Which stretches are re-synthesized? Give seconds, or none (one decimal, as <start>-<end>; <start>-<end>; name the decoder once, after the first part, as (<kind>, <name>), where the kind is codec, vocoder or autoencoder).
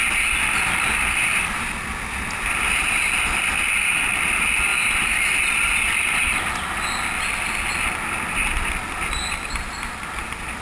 none